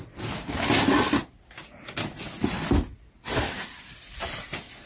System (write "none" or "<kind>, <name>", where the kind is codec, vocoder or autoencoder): none